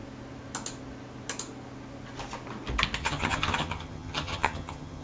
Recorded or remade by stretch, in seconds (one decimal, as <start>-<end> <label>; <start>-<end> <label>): 0.0-3.0 recorded; 3.0-5.0 remade